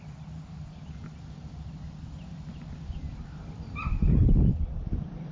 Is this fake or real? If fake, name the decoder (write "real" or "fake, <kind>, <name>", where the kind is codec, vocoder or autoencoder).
real